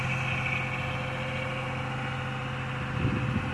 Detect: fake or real real